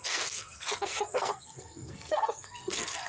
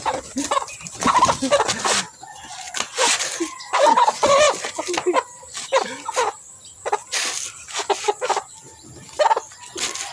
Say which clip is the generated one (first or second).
first